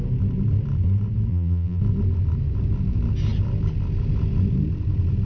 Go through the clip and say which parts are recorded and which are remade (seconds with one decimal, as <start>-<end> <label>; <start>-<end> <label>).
0.0-1.3 recorded; 1.3-1.8 remade; 1.8-5.2 recorded